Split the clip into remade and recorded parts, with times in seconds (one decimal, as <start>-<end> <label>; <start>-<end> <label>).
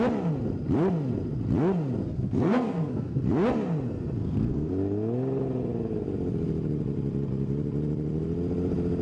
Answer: 0.0-2.0 recorded; 2.0-3.2 remade; 3.2-4.2 recorded; 4.2-4.7 remade; 4.7-9.0 recorded